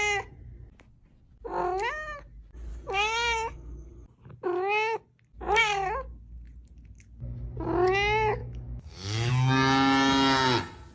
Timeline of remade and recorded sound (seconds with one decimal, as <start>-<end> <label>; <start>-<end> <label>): 0.0-2.7 recorded; 2.7-3.9 remade; 3.9-8.4 recorded; 8.4-9.3 remade; 9.3-10.9 recorded

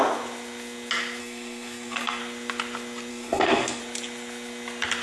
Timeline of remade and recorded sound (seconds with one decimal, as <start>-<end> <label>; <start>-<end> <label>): 0.0-1.2 recorded; 1.2-2.2 remade; 2.2-3.1 recorded; 3.1-3.8 remade; 3.8-5.0 recorded